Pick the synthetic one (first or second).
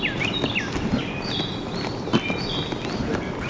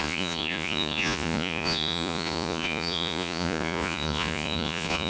second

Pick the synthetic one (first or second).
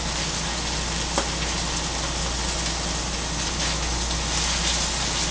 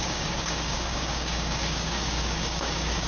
second